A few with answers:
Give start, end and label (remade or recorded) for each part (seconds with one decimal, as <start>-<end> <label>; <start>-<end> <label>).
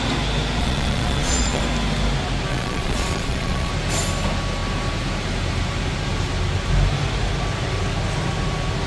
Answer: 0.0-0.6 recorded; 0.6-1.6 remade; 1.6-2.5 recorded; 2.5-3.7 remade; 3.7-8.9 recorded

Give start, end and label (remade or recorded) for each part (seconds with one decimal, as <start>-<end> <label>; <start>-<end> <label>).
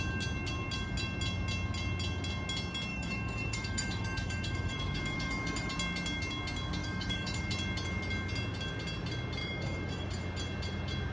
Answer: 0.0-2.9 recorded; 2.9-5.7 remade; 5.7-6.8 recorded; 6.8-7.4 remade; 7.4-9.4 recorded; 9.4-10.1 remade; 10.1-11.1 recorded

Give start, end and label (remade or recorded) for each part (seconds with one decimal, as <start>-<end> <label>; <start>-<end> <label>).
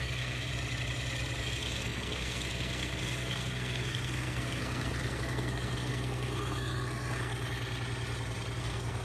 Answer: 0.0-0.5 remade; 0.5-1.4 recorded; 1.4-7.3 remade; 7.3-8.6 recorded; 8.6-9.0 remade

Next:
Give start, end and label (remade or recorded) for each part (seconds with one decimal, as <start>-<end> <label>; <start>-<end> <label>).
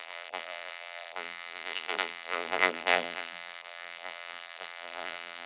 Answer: 0.0-5.5 remade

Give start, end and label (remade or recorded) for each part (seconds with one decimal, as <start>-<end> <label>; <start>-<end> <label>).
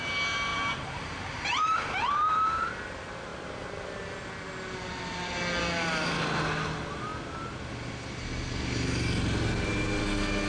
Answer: 0.0-0.5 recorded; 0.5-2.7 remade; 2.7-3.3 recorded; 3.3-4.0 remade; 4.0-10.5 recorded